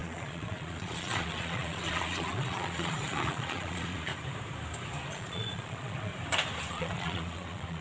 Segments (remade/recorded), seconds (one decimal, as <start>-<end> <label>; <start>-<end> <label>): 0.0-4.1 remade; 4.1-5.1 recorded; 5.1-6.1 remade; 6.1-6.7 recorded; 6.7-7.8 remade